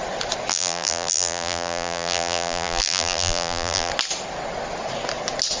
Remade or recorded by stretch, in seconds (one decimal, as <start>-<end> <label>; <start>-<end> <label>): 0.0-0.5 recorded; 0.5-3.9 remade; 3.9-5.6 recorded